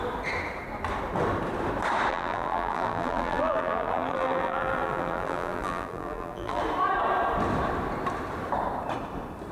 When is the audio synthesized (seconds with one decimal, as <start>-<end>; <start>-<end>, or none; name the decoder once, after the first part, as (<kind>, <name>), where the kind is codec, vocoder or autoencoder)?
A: 2.1-6.6 (vocoder, BigVGAN v2)